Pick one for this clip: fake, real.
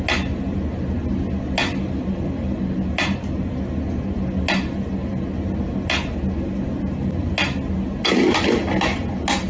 real